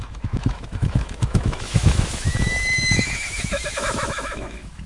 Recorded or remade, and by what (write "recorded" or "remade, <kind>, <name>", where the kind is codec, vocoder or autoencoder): remade, autoencoder, DAC-VAE